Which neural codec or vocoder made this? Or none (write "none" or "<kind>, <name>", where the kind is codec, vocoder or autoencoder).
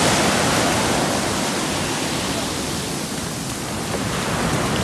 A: none